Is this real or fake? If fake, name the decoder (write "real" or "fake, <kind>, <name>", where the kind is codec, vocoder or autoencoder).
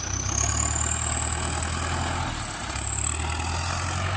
real